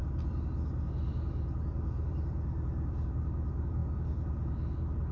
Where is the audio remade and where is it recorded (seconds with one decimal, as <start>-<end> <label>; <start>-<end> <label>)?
0.0-5.1 recorded